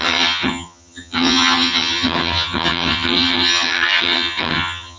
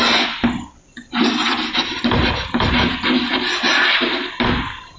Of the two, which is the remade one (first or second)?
first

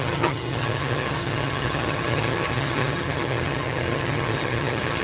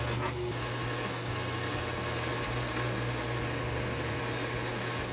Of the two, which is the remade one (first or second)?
first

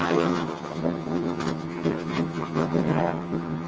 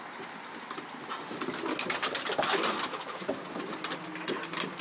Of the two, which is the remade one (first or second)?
first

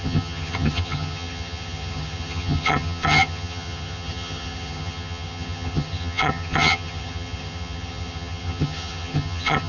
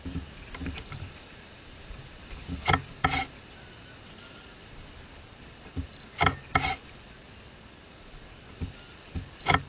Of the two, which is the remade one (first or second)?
first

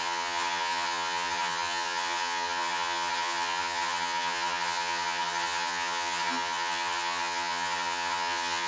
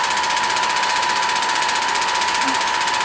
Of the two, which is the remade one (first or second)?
first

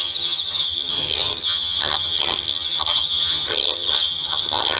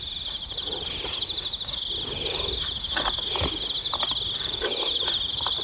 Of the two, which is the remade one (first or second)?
first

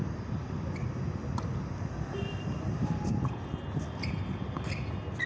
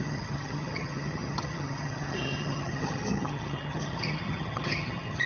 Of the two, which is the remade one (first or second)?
second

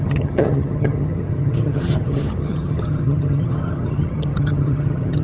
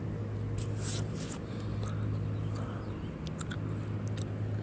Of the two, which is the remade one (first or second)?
first